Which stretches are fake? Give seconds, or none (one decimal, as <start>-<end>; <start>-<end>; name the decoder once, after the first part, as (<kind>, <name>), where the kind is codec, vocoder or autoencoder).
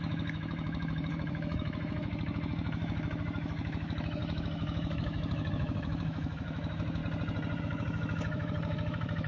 0.0-7.0 (autoencoder, DAC-VAE); 7.6-9.3